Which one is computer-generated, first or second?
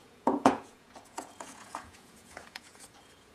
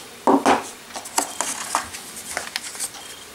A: first